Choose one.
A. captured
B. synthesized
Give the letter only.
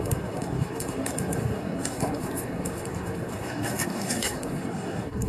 B